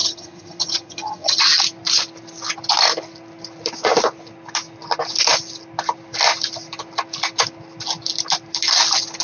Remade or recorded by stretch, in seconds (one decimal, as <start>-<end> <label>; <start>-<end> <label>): 0.0-1.4 remade; 1.4-9.2 recorded